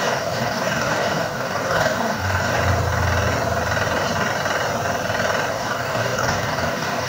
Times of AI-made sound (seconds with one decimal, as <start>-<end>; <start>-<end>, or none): 0.0-2.6; 5.5-7.1